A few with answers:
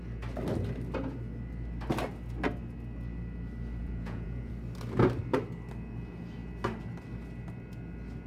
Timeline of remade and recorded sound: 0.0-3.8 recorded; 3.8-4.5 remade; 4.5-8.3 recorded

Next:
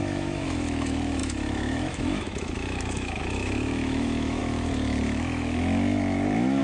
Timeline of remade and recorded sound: 0.0-6.6 remade

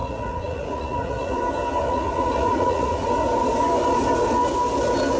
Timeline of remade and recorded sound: 0.0-1.4 remade; 1.4-1.8 recorded; 1.8-3.1 remade; 3.1-5.2 recorded

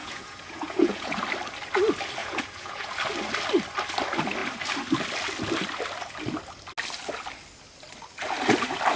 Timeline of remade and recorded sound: 0.0-1.2 remade; 1.2-2.2 recorded; 2.2-2.9 remade; 2.9-9.0 recorded

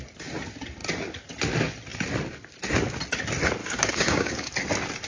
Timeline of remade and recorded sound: 0.0-3.6 recorded; 3.6-4.5 remade; 4.5-5.1 recorded